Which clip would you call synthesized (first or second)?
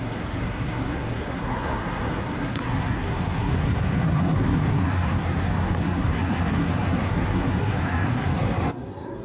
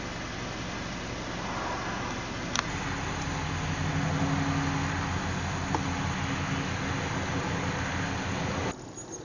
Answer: first